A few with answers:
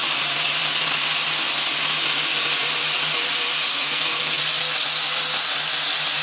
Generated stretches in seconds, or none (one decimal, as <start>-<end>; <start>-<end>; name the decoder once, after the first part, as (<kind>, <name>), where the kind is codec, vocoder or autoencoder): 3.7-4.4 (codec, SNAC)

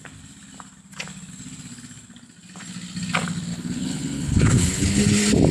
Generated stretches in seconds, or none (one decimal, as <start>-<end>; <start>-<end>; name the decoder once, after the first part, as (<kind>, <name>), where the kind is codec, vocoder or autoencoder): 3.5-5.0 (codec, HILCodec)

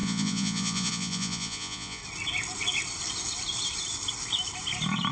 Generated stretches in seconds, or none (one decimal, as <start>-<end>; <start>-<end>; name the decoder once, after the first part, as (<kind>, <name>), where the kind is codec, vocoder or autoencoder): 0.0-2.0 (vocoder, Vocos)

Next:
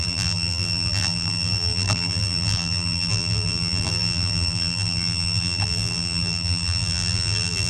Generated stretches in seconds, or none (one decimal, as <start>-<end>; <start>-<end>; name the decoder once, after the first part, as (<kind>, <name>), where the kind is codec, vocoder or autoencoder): 0.0-7.7 (vocoder, BigVGAN v2)